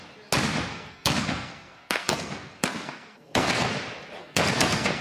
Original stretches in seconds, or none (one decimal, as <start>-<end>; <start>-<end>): 0.0-0.7; 3.7-4.2